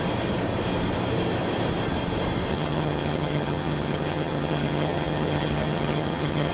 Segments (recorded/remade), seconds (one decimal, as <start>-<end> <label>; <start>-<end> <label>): 0.0-2.5 recorded; 2.5-6.5 remade